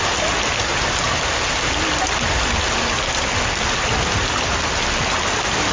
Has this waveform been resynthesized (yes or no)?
no